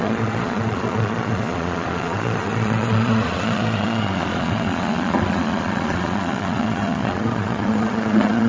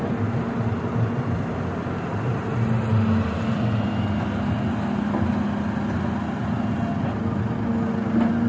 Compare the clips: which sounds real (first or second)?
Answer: second